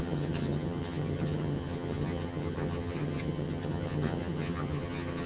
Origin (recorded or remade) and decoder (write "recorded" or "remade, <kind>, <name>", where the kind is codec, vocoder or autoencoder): remade, vocoder, HiFi-GAN